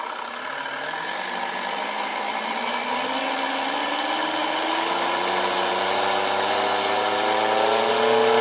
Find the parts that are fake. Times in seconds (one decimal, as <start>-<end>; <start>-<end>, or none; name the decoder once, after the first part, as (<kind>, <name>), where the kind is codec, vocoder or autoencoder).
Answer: none